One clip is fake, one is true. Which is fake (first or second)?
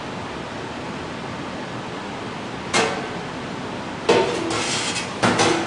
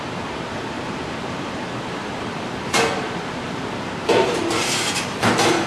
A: second